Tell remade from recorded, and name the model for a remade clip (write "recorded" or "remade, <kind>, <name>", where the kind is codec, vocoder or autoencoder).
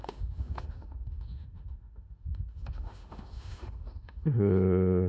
remade, autoencoder, DAC-VAE